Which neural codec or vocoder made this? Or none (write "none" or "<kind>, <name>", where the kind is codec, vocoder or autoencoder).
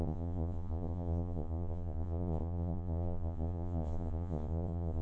vocoder, Vocos